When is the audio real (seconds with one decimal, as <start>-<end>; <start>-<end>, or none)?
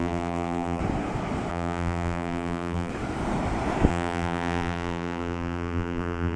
0.8-1.5; 2.9-3.9